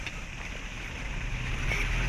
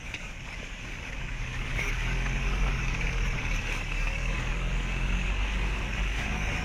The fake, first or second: second